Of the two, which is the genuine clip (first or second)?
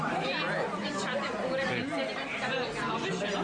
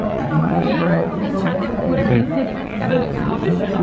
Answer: first